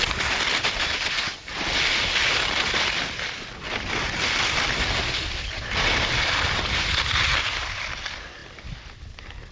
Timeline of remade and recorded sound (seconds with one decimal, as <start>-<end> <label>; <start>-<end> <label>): 0.0-9.5 recorded